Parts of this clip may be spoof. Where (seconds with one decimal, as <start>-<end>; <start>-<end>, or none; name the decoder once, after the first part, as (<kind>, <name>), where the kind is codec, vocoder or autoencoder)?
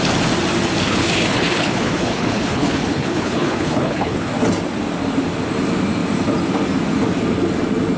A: 0.9-4.3 (codec, HILCodec)